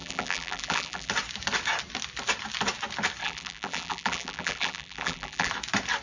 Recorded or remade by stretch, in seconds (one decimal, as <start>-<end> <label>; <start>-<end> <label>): 0.0-1.1 remade; 1.1-3.2 recorded; 3.2-5.5 remade; 5.5-6.0 recorded